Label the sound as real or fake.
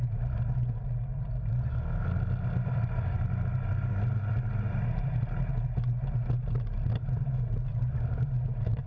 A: real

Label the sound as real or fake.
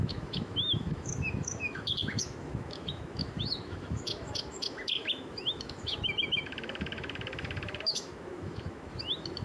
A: fake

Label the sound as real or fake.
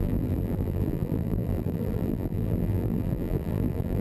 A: fake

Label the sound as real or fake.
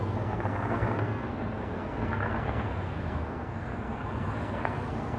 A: fake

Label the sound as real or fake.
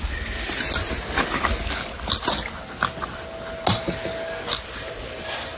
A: real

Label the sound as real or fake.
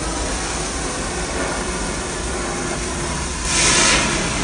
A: real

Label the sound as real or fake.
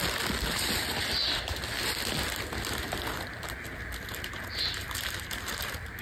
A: real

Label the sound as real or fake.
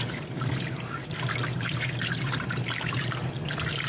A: real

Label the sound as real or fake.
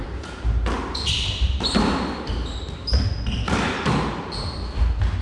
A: real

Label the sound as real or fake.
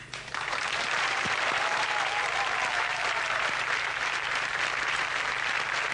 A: fake